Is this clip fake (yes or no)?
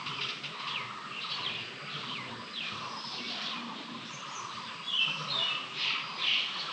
no